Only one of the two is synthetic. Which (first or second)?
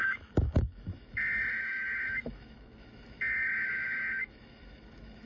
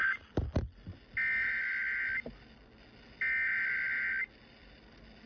first